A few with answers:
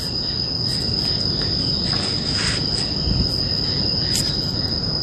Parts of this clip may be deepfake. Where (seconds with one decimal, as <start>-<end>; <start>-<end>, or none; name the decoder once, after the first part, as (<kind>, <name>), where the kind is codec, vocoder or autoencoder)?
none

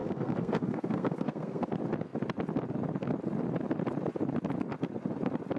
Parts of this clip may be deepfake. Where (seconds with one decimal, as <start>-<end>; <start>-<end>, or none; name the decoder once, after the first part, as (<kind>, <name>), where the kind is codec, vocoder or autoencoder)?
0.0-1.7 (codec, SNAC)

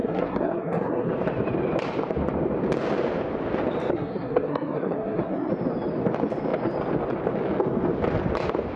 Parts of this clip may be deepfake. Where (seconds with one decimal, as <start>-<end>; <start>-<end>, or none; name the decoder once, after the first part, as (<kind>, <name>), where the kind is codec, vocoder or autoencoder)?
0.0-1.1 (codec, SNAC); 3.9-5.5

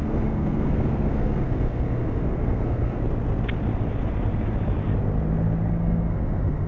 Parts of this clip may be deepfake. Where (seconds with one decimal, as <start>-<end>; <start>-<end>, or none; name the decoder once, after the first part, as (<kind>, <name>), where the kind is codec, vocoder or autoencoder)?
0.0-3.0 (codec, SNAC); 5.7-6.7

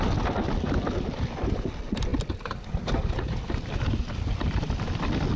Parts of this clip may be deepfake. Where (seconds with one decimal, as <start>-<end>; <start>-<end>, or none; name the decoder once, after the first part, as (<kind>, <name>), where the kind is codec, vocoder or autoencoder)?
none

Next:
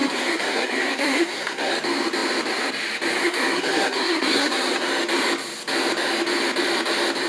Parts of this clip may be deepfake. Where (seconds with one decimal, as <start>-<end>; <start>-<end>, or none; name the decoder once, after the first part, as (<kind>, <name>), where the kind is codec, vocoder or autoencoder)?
0.0-1.7 (codec, SNAC); 3.2-4.9

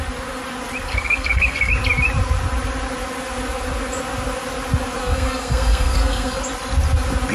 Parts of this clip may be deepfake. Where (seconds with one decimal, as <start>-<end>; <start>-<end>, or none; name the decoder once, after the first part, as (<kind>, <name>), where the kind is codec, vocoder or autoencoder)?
0.9-1.7 (codec, SNAC); 5.0-6.4